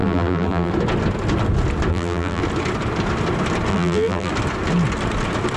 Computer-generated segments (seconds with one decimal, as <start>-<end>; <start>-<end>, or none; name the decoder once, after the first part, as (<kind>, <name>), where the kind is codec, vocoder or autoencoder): 0.0-0.7 (vocoder, BigVGAN v2); 1.9-2.4; 3.7-4.3